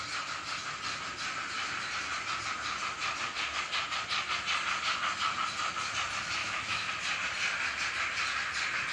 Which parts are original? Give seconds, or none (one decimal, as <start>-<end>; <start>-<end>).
0.0-6.4; 6.9-8.9